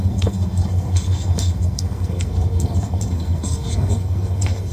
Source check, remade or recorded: remade